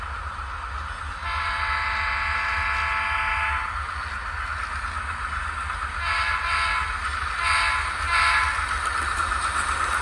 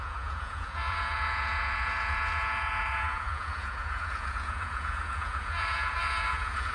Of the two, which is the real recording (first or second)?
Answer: first